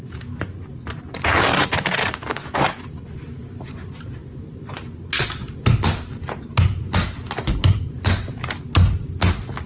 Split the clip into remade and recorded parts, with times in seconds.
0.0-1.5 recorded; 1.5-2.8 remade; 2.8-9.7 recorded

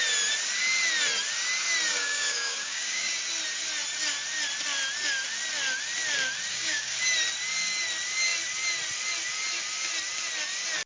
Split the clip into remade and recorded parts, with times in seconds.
0.0-1.9 recorded; 1.9-3.1 remade; 3.1-6.5 recorded; 6.5-7.0 remade; 7.0-10.9 recorded

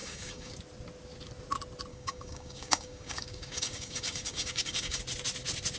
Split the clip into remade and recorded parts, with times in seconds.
0.0-0.5 remade; 0.5-1.9 recorded; 1.9-5.0 remade; 5.0-5.8 recorded